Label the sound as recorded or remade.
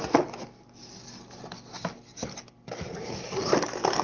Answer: recorded